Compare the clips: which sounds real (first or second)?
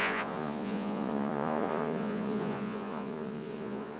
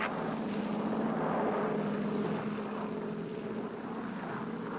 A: second